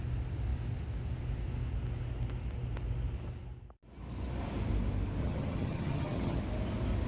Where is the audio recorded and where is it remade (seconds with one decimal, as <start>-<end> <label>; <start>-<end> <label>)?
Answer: 0.0-5.2 recorded; 5.2-6.4 remade; 6.4-7.1 recorded